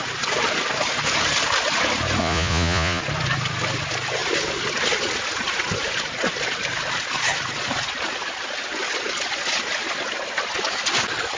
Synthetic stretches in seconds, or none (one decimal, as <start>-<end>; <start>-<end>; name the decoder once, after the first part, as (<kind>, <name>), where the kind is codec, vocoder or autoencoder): 2.2-3.0 (vocoder, Vocos)